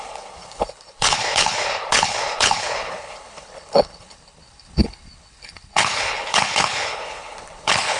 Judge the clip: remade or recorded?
remade